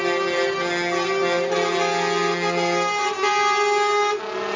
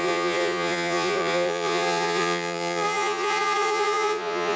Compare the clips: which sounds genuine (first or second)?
first